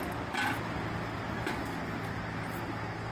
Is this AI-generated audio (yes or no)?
no